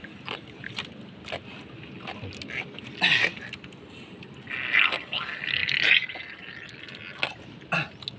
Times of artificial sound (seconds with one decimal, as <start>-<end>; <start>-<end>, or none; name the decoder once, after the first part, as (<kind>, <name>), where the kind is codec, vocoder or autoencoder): none